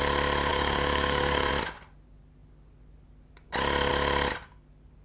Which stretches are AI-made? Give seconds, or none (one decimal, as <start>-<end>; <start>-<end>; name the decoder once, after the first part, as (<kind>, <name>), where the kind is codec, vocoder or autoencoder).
0.5-1.5 (codec, DAC)